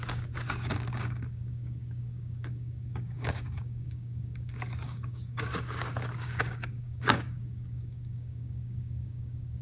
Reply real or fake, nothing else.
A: fake